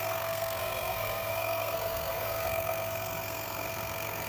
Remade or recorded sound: remade